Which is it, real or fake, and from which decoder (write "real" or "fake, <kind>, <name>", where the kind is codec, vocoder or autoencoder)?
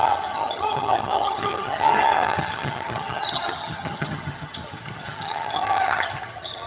fake, vocoder, HiFi-GAN